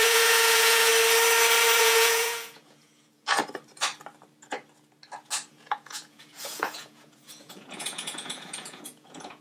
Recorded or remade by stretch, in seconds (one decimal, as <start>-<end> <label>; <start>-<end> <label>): 0.0-0.9 remade; 0.9-1.8 recorded; 1.8-3.4 remade; 3.4-5.5 recorded; 5.5-9.4 remade